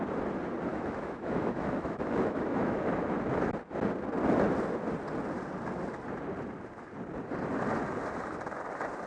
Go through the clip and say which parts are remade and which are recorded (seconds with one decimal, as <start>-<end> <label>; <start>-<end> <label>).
0.0-0.7 recorded; 0.7-2.9 remade; 2.9-9.1 recorded